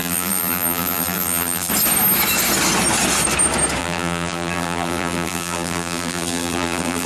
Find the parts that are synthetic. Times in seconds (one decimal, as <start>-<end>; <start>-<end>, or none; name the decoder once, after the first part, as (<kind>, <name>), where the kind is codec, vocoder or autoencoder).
0.0-1.7 (vocoder, BigVGAN v2); 3.8-7.1